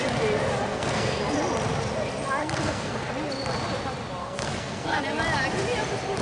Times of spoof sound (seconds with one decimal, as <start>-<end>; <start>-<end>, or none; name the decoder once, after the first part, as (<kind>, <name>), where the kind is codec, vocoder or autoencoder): 0.7-1.2 (codec, SNAC); 2.4-3.1; 4.2-5.0